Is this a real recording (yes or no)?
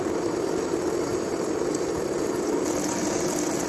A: yes